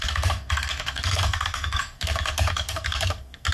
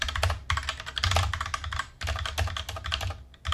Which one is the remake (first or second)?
first